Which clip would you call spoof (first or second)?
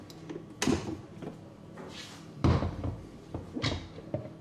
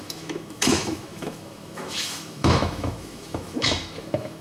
second